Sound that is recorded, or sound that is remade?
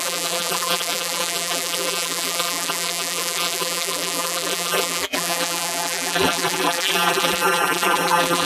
remade